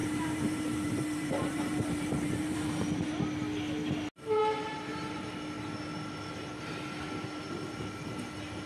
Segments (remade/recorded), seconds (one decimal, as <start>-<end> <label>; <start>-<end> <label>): 0.0-3.2 remade; 3.2-4.4 recorded; 4.4-4.9 remade; 4.9-8.7 recorded